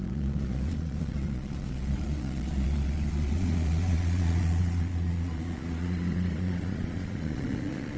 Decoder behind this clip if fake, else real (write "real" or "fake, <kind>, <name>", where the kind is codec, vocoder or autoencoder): fake, vocoder, Vocos